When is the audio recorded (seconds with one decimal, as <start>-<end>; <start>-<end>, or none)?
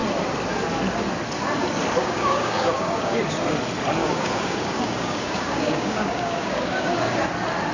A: 0.0-2.0; 3.2-4.0; 7.2-7.7